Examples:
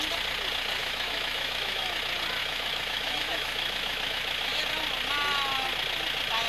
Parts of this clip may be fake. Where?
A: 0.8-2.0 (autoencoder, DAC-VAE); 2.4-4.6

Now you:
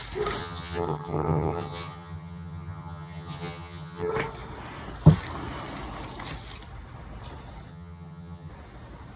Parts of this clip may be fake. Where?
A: 0.4-4.1 (vocoder, HiFi-GAN); 7.7-8.5

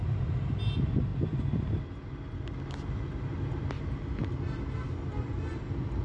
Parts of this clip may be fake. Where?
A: none

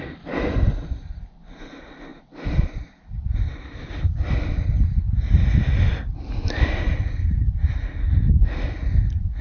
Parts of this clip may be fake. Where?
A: none

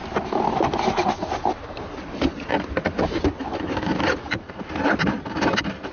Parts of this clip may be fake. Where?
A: none

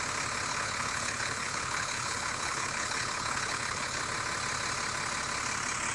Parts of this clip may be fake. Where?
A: 0.5-4.0 (codec, HILCodec)

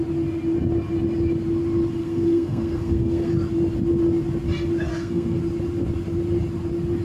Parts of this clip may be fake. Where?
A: 2.0-3.3 (codec, SNAC); 4.9-5.4

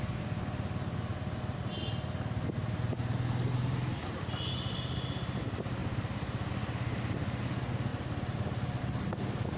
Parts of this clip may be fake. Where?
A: 1.1-1.9 (vocoder, BigVGAN v2); 7.9-8.8